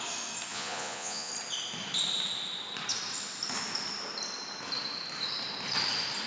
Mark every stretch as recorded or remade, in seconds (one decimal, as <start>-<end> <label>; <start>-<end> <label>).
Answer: 0.0-0.5 recorded; 0.5-1.3 remade; 1.3-6.3 recorded